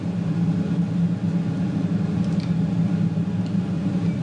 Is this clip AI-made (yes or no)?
no